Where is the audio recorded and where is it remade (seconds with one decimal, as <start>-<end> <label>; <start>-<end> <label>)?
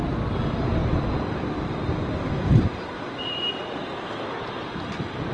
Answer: 0.0-0.8 recorded; 0.8-4.0 remade; 4.0-5.3 recorded